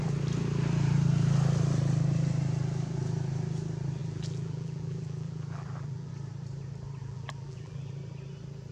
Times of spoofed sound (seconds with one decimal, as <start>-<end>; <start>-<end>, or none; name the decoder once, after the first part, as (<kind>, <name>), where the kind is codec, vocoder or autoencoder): 4.0-6.1 (vocoder, BigVGAN v2); 7.0-7.9